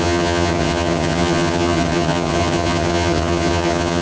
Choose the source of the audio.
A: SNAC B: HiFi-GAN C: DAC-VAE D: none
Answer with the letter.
B